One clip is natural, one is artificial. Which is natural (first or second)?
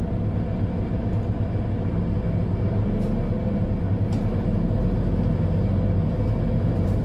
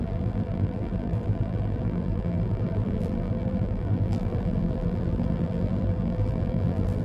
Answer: first